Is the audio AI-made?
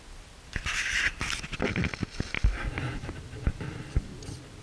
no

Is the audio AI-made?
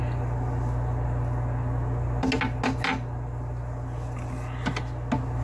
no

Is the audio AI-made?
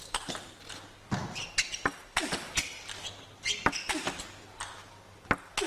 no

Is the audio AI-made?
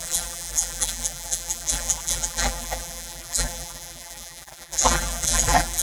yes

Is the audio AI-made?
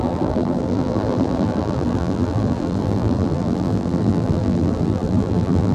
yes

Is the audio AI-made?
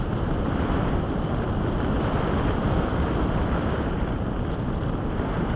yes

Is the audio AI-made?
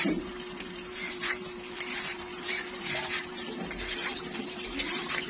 yes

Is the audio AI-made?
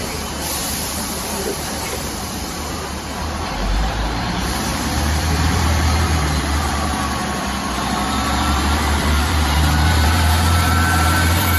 yes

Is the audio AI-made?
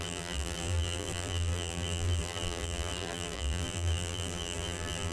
yes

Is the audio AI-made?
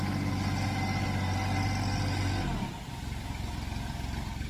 no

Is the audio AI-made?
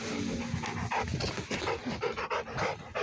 no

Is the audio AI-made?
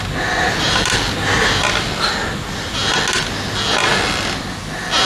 no